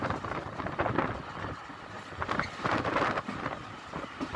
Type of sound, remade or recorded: recorded